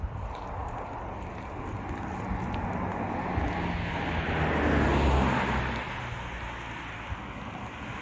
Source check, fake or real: real